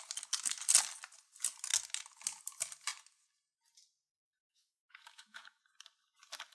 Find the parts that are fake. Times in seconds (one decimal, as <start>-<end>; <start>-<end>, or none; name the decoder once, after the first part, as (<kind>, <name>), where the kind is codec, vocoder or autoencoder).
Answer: 4.4-5.6 (autoencoder, DAC-VAE)